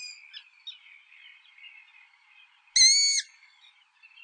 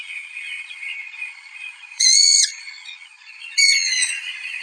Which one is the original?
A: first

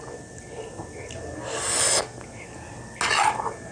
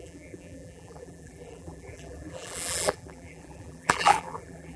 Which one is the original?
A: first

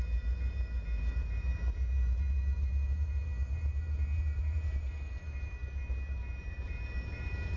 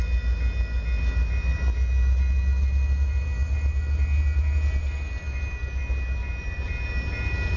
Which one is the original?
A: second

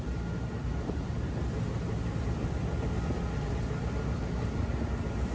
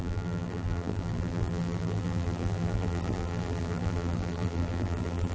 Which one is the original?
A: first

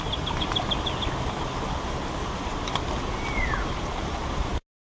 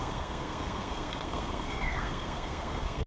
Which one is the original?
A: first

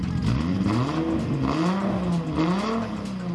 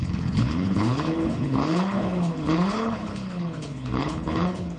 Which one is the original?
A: first